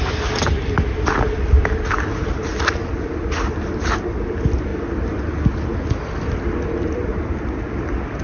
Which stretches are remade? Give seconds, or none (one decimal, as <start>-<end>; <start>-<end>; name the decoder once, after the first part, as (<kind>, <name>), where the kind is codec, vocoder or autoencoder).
none